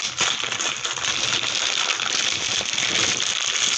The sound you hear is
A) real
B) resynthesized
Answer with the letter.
B